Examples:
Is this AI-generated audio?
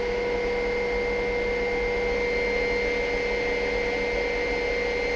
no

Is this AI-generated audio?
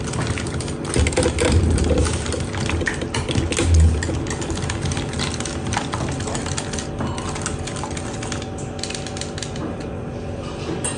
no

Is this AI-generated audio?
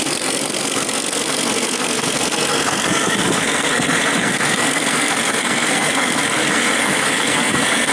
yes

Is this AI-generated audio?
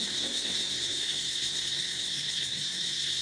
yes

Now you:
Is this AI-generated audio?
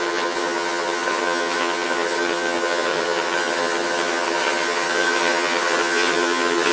yes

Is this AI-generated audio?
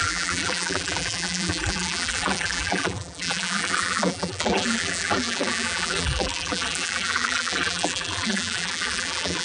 yes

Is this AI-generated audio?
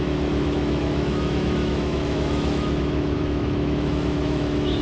yes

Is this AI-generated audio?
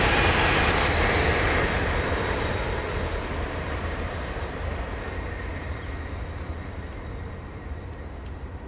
no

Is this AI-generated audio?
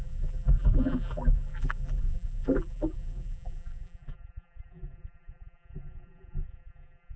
yes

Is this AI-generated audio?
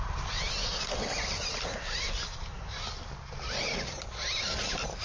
no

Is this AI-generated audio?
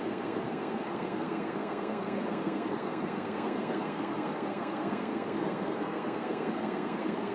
yes